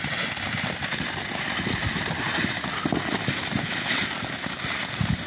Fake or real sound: real